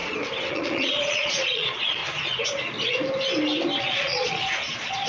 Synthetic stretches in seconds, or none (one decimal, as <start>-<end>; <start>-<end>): 0.5-2.0; 3.8-5.1